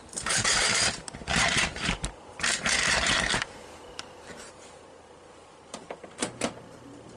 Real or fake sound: fake